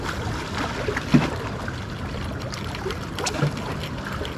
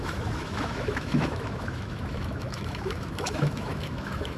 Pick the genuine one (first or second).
first